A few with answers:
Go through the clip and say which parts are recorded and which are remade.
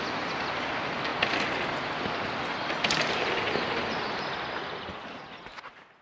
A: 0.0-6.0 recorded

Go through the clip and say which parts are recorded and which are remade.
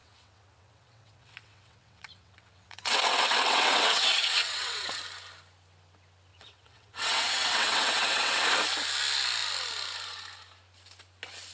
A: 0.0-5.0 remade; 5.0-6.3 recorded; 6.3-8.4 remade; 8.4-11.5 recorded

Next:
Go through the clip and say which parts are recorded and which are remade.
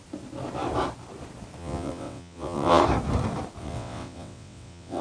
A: 0.0-1.6 recorded; 1.6-2.8 remade; 2.8-3.6 recorded; 3.6-5.0 remade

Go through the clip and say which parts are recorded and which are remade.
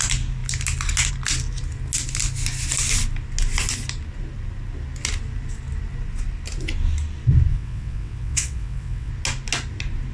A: 0.0-7.5 recorded; 7.5-9.1 remade; 9.1-10.1 recorded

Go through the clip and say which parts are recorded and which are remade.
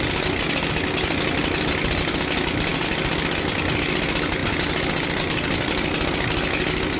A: 0.0-7.0 recorded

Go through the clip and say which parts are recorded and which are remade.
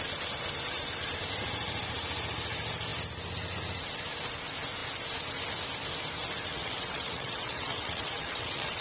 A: 0.0-6.5 recorded; 6.5-8.8 remade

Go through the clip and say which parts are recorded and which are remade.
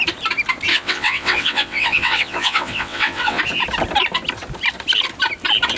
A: 0.0-0.7 recorded; 0.7-3.4 remade; 3.4-5.8 recorded